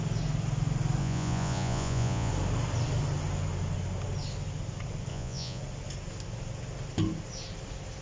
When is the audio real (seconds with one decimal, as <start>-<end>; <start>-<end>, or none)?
0.0-1.0; 2.3-5.1; 5.6-8.0